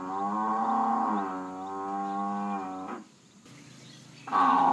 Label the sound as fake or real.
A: real